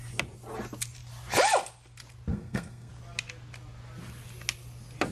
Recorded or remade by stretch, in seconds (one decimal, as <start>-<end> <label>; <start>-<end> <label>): 0.0-2.3 recorded; 2.3-2.9 remade; 2.9-5.1 recorded